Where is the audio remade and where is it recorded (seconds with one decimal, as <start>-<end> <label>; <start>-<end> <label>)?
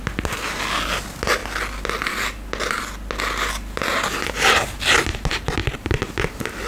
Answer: 0.0-6.7 recorded